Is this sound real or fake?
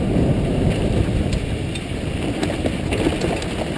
real